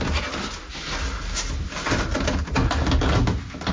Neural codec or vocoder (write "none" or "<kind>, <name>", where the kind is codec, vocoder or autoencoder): none